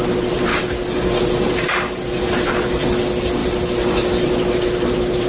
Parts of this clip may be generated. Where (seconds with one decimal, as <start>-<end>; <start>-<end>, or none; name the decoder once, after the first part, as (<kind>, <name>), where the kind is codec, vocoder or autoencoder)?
none